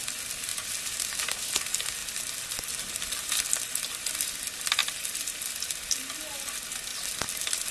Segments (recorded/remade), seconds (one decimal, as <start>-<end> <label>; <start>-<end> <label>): 0.0-2.0 recorded; 2.0-3.8 remade; 3.8-6.9 recorded; 6.9-7.7 remade